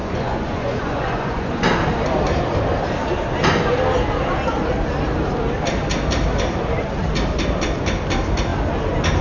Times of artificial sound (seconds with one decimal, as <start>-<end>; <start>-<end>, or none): 0.0-1.5